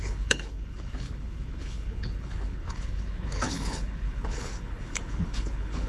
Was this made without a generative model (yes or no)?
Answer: no